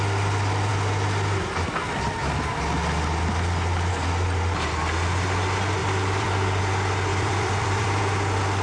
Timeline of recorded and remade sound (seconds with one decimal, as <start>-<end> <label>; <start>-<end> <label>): 0.0-5.8 recorded; 5.8-6.6 remade; 6.6-7.1 recorded; 7.1-8.0 remade; 8.0-8.6 recorded